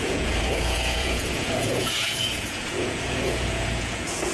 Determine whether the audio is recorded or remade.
remade